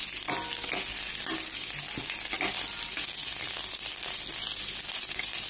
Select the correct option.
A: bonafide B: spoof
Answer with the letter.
A